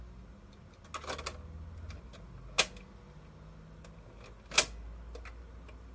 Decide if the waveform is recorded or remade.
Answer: recorded